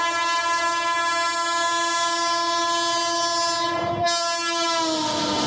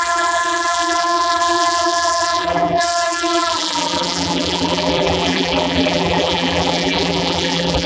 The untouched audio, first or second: first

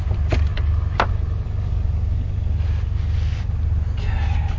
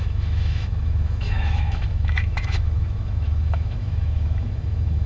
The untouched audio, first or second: first